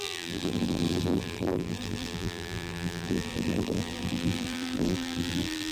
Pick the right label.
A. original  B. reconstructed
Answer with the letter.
B